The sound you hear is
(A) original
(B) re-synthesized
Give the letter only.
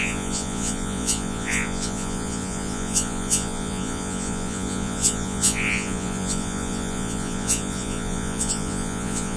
B